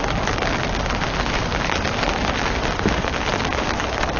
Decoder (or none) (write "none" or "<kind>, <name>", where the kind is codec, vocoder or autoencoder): none